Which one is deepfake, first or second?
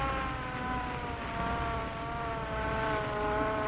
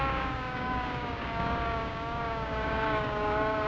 second